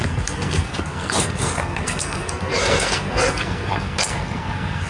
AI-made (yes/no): yes